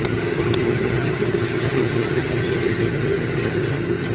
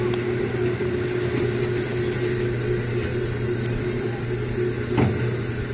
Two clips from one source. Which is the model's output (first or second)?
first